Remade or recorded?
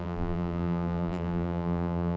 remade